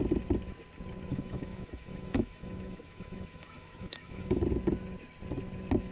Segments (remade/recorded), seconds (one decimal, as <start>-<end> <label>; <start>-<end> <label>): 0.0-1.1 recorded; 1.1-4.4 remade; 4.4-5.9 recorded